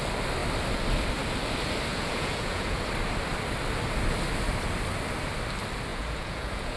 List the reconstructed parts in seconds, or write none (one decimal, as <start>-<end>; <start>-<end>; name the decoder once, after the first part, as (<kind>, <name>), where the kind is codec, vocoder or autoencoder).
1.9-2.8 (vocoder, Vocos); 5.9-6.8